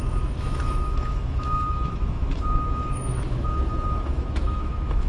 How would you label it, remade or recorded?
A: remade